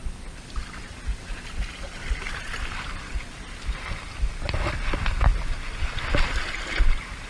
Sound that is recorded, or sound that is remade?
recorded